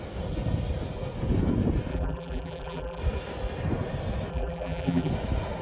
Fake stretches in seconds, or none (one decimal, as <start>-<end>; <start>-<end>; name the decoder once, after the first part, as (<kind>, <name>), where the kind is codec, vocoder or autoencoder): 1.9-3.0 (vocoder, BigVGAN v2); 4.3-5.1